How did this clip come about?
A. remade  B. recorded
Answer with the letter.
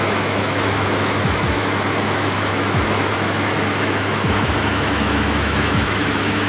A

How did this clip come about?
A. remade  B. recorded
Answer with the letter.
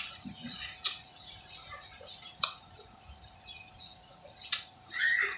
A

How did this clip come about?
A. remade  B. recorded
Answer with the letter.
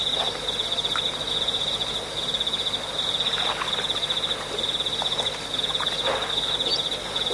B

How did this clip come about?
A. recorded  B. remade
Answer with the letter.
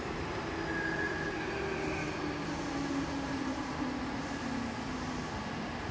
A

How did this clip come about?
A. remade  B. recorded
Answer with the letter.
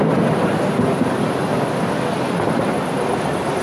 B